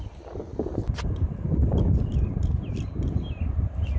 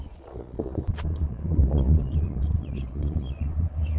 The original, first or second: first